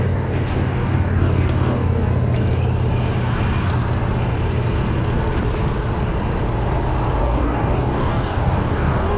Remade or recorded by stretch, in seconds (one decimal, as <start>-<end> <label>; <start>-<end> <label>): 0.0-2.1 remade; 2.1-7.2 recorded; 7.2-9.2 remade